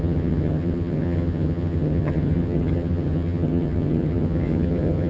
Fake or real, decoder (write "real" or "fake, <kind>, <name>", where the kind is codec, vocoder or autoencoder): fake, vocoder, HiFi-GAN